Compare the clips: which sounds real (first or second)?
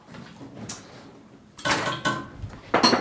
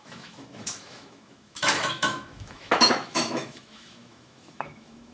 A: first